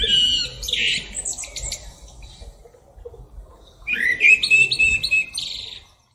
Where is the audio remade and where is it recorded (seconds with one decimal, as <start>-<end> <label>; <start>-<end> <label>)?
0.0-3.5 recorded; 3.5-4.3 remade; 4.3-4.8 recorded; 4.8-5.3 remade; 5.3-6.1 recorded